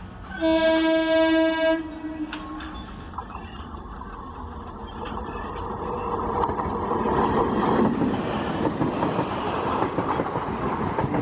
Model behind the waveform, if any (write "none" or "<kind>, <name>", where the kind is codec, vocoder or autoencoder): none